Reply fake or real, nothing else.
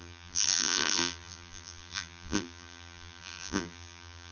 fake